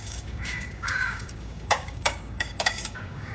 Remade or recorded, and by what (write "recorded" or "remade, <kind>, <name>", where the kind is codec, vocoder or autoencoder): remade, codec, DAC